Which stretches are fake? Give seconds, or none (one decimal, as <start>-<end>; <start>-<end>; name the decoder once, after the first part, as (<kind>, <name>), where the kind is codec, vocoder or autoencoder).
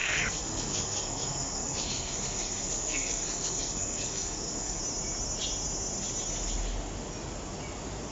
0.0-4.8 (codec, SNAC)